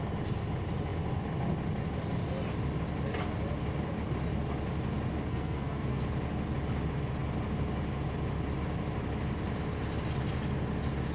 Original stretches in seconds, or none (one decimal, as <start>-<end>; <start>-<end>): 0.0-5.3; 6.0-11.1